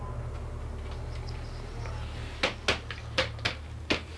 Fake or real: real